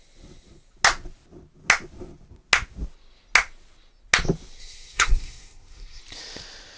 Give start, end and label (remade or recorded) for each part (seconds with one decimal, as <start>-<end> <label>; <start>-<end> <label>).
0.0-4.6 recorded; 4.6-6.0 remade; 6.0-6.8 recorded